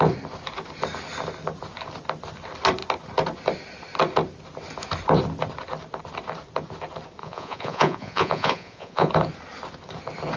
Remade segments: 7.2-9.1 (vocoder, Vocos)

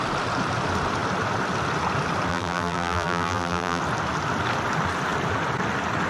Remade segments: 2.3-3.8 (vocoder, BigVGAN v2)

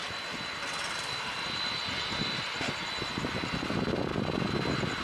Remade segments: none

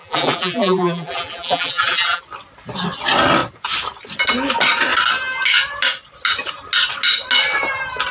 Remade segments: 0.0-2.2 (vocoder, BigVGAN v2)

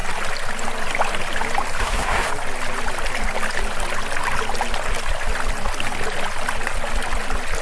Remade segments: 1.8-2.3 (codec, SNAC)

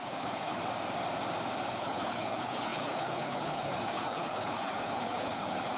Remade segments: 0.0-0.6 (codec, HILCodec); 1.7-5.8

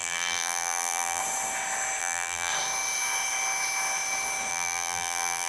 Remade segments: 0.0-1.2 (vocoder, BigVGAN v2); 2.0-2.5; 4.5-5.5

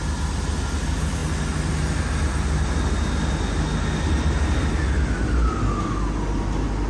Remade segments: none